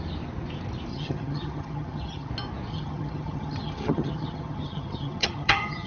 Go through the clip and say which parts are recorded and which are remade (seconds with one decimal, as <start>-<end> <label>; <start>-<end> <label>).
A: 0.0-0.9 recorded; 0.9-2.3 remade; 2.3-2.7 recorded; 2.7-5.9 remade